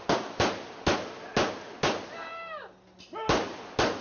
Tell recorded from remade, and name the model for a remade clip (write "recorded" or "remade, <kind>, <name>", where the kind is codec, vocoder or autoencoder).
recorded